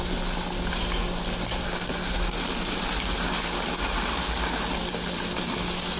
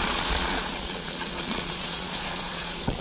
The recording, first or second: first